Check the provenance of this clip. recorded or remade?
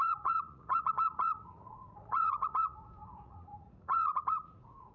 remade